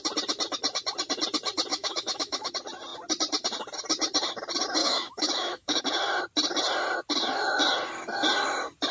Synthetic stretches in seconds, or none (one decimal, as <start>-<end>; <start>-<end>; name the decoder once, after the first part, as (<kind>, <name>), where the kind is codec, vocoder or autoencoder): 1.7-2.5 (autoencoder, DAC-VAE); 4.8-5.8